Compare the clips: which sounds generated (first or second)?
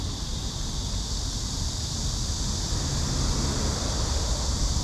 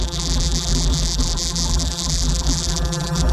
second